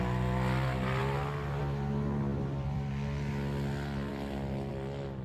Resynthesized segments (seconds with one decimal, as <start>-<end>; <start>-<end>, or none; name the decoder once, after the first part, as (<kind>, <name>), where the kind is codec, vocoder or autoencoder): 2.3-2.9 (vocoder, BigVGAN v2)

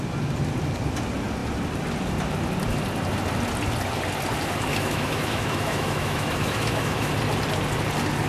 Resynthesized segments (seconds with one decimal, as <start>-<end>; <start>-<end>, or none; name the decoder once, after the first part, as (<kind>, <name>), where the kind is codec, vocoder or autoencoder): 4.7-7.1 (autoencoder, DAC-VAE)

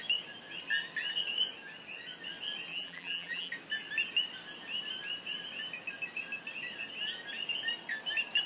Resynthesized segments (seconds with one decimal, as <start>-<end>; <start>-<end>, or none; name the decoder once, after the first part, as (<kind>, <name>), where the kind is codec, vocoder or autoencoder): 2.7-3.5 (vocoder, BigVGAN v2)

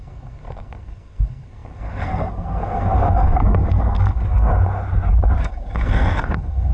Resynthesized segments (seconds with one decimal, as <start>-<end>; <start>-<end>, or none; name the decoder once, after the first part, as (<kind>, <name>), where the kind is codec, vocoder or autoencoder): 0.0-4.5 (codec, SNAC); 5.4-6.7

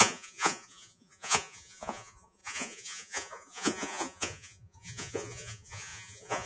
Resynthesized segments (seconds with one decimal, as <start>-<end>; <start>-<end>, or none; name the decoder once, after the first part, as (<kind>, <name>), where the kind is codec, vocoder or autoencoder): 0.0-6.5 (vocoder, Vocos)

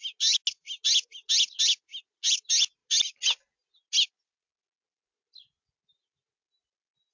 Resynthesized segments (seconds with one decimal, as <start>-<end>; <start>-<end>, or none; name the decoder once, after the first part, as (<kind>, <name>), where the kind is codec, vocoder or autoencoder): none